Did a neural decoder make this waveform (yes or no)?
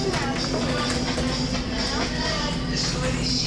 no